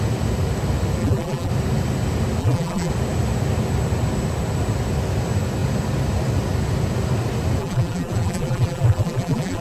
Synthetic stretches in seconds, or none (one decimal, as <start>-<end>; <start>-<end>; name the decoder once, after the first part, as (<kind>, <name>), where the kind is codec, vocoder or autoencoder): 1.0-1.5 (vocoder, BigVGAN v2); 2.4-2.9; 7.6-9.6